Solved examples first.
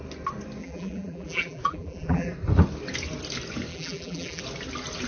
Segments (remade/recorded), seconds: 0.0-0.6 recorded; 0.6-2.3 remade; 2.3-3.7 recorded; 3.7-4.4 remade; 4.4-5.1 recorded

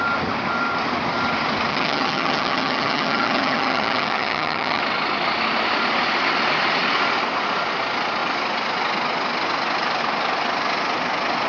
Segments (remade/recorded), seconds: 0.0-1.7 recorded; 1.7-4.8 remade; 4.8-11.5 recorded

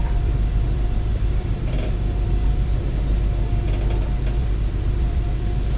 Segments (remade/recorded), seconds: 0.0-2.7 remade; 2.7-4.4 recorded; 4.4-5.8 remade

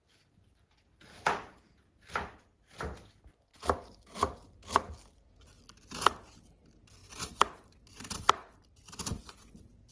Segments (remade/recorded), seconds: 0.0-3.5 recorded; 3.5-4.1 remade; 4.1-7.0 recorded; 7.0-8.1 remade; 8.1-9.9 recorded

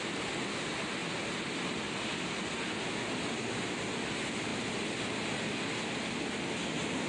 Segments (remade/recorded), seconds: 0.0-7.1 recorded

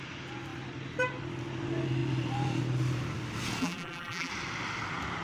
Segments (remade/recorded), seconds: 0.0-3.6 recorded; 3.6-4.3 remade; 4.3-5.2 recorded

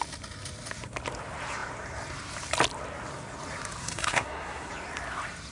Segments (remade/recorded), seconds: 0.0-3.8 recorded; 3.8-4.7 remade; 4.7-5.5 recorded